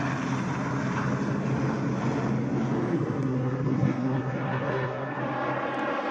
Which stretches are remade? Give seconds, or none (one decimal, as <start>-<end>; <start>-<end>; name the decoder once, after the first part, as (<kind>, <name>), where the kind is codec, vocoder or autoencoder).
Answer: 2.9-5.2 (codec, SNAC)